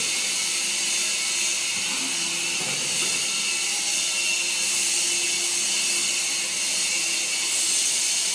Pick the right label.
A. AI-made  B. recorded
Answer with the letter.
B